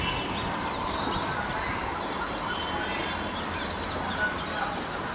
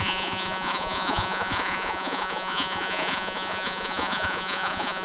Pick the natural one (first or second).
first